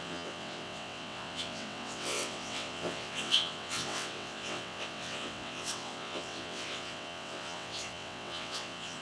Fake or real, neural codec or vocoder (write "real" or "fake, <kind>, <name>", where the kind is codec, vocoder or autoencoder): fake, vocoder, WaveNeXt